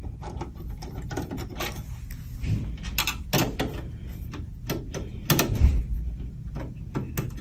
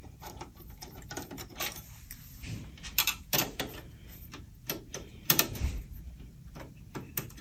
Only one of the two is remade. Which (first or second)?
second